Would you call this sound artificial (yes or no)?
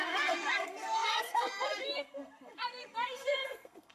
yes